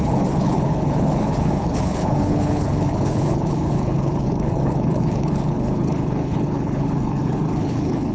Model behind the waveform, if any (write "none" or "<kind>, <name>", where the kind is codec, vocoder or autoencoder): codec, HILCodec